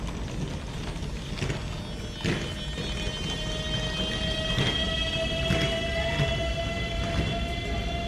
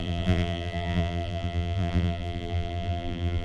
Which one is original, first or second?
first